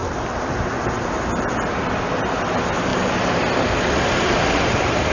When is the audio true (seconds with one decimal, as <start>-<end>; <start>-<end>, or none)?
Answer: 0.0-5.1